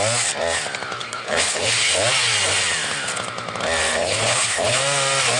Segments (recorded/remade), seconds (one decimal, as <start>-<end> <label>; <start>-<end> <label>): 0.0-1.0 recorded; 1.0-1.9 remade; 1.9-4.0 recorded; 4.0-4.8 remade; 4.8-5.4 recorded